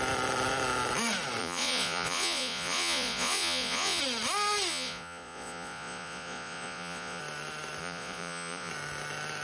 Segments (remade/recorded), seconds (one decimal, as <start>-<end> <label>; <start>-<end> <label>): 0.0-1.4 recorded; 1.4-4.0 remade; 4.0-4.7 recorded; 4.7-7.2 remade; 7.2-7.8 recorded; 7.8-8.7 remade; 8.7-9.4 recorded